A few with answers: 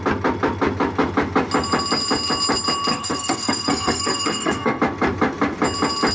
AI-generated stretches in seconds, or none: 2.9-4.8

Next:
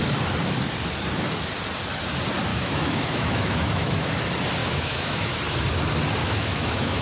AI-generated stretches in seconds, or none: 2.5-4.1; 4.6-5.3; 6.2-7.0

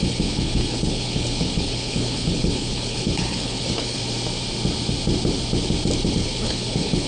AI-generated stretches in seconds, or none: 0.0-4.0; 6.1-7.1

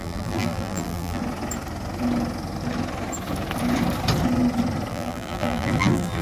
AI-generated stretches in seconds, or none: 0.0-1.2; 4.9-6.2

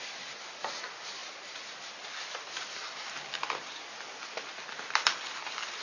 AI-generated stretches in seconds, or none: 0.0-5.8

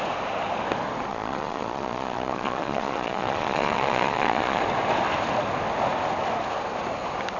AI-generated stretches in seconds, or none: 1.1-4.6